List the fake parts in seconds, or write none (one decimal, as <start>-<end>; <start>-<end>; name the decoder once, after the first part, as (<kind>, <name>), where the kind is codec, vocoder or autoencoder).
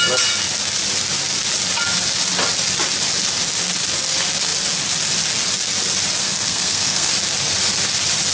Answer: 6.2-7.1 (codec, SNAC)